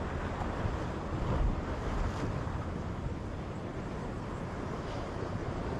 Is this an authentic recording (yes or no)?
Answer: yes